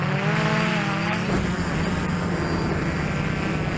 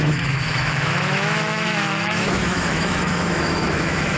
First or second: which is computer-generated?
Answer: second